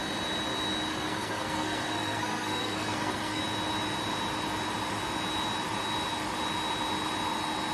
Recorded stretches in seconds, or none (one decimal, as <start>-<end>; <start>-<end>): 0.0-0.9; 3.4-7.7